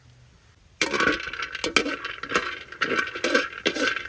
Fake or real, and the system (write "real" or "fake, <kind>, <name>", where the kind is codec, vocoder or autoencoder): real